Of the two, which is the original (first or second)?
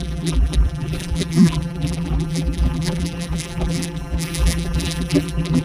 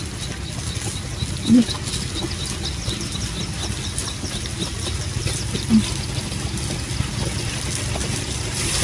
second